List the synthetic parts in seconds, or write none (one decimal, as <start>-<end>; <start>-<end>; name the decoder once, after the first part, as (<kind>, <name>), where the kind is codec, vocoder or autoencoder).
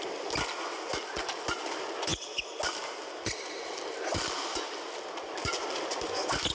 none